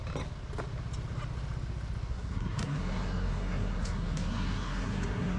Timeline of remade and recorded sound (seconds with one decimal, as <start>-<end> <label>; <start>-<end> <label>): 0.0-2.1 recorded; 2.1-5.4 remade